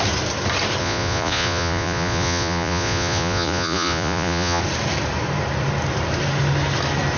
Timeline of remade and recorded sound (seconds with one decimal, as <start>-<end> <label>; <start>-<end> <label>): 0.0-0.8 recorded; 0.8-4.6 remade; 4.6-7.2 recorded